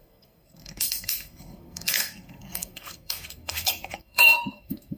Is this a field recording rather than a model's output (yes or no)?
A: no